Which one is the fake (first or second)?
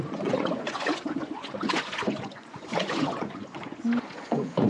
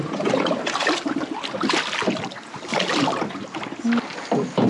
first